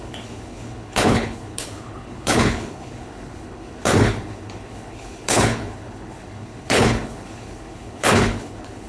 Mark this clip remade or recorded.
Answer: remade